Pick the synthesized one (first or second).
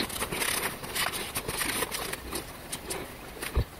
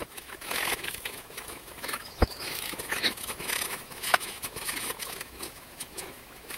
second